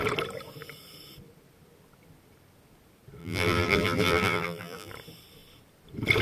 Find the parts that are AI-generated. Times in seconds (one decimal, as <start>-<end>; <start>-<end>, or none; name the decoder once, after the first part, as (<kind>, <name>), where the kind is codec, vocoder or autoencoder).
3.2-4.9 (vocoder, BigVGAN v2)